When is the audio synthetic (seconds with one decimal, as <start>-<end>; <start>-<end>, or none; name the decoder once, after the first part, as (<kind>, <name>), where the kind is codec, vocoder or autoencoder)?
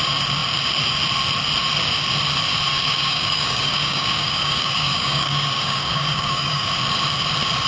2.7-6.7 (codec, DAC)